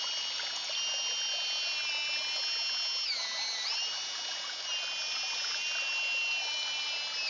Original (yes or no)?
yes